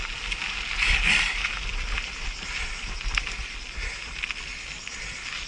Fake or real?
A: real